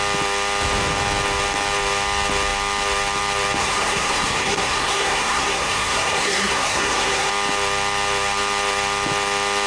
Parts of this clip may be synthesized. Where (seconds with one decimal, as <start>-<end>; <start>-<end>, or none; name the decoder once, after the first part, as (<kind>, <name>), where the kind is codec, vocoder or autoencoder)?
3.6-7.3 (codec, SNAC)